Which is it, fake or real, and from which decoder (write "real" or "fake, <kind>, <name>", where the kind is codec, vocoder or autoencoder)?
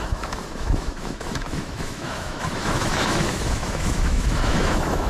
fake, autoencoder, DAC-VAE